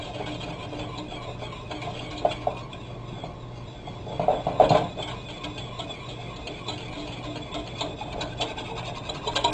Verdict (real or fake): real